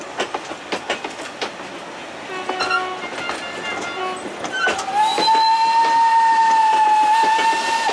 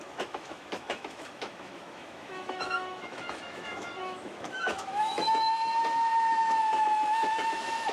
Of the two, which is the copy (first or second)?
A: second